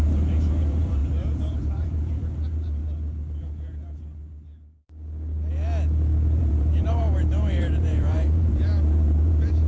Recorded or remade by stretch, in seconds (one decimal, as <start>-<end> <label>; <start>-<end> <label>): 0.0-1.0 remade; 1.0-1.6 recorded; 1.6-2.8 remade; 2.8-6.4 recorded; 6.4-9.7 remade